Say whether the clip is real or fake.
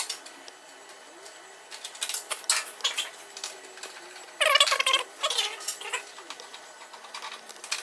real